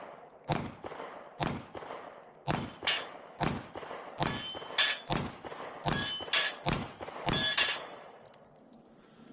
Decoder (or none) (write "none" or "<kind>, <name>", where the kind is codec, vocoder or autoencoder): none